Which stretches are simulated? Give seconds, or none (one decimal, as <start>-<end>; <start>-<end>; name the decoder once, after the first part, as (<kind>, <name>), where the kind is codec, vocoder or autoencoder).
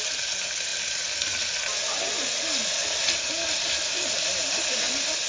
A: none